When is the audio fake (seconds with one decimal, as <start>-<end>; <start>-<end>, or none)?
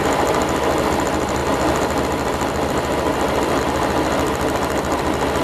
1.4-3.6